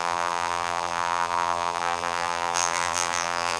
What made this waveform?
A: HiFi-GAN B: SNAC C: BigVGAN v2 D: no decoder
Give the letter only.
C